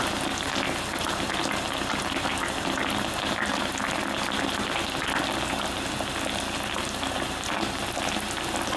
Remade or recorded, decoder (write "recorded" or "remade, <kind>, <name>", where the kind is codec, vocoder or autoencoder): recorded